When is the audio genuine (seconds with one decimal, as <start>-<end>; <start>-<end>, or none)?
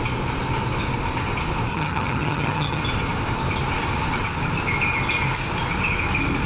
0.0-1.7; 2.8-6.5